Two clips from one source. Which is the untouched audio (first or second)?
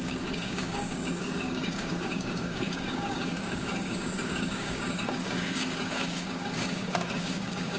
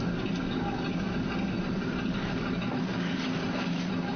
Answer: second